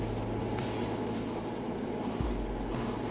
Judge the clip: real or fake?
real